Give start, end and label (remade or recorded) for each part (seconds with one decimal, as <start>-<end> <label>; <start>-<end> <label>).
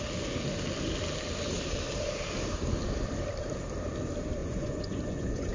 0.0-4.4 recorded; 4.4-5.5 remade